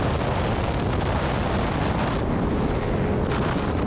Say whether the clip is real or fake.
real